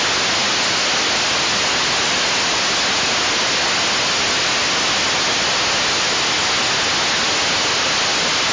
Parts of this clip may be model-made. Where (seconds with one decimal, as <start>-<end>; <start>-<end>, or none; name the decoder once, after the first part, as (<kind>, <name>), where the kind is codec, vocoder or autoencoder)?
none